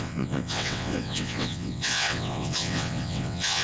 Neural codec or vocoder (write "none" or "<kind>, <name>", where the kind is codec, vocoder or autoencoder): vocoder, WaveNeXt